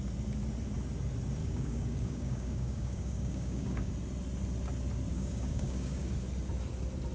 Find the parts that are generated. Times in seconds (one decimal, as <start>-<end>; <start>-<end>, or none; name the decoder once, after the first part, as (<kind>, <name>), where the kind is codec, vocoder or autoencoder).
1.4-3.9 (codec, DAC); 5.1-6.1